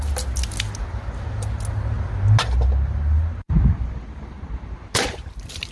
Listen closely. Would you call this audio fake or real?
real